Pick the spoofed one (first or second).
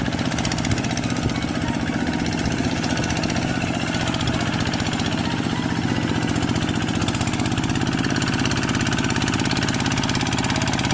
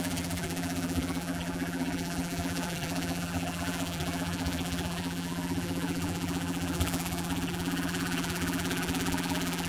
second